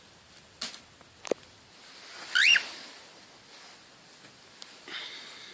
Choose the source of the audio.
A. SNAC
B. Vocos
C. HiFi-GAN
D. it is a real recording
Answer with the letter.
D